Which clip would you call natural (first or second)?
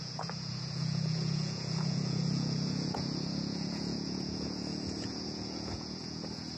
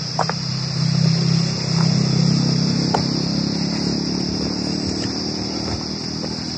second